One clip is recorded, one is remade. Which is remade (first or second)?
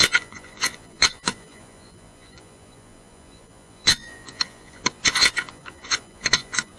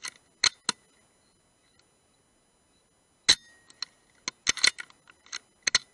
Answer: first